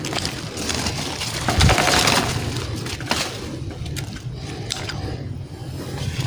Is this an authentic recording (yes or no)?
yes